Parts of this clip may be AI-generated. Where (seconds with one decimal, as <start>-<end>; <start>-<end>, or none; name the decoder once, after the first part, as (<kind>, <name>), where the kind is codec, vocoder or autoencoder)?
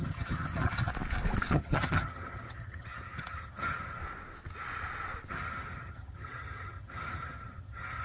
0.0-0.9 (vocoder, HiFi-GAN); 1.5-4.0; 5.3-8.0